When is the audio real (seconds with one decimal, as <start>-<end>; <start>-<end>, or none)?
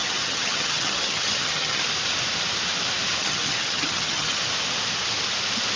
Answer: 1.8-3.2; 4.4-5.8